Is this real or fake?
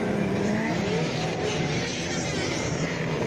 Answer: fake